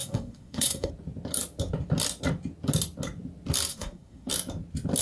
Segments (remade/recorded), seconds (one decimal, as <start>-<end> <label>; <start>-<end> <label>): 0.0-0.9 remade; 0.9-3.7 recorded; 3.7-4.3 remade; 4.3-5.0 recorded